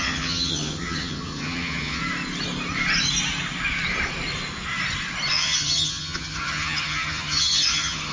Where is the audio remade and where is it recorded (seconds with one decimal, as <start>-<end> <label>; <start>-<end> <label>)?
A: 0.0-2.0 remade; 2.0-5.3 recorded; 5.3-8.1 remade